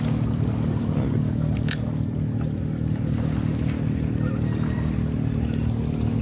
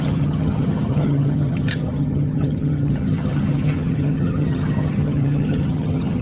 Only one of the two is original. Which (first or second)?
first